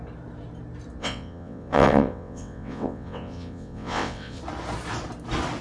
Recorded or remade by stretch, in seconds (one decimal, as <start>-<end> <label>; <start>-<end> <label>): 0.0-1.0 recorded; 1.0-4.4 remade; 4.4-5.6 recorded